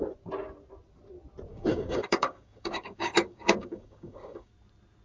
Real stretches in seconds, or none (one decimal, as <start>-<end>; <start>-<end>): 0.0-1.5; 4.5-5.0